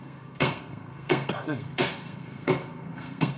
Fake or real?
fake